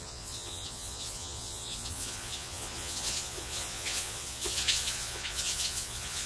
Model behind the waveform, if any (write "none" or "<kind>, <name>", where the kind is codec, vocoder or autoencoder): vocoder, Vocos